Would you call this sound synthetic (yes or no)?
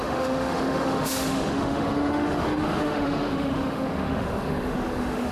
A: yes